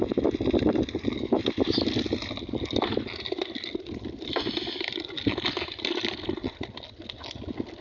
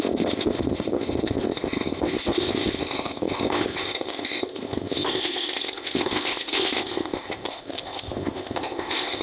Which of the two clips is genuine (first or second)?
first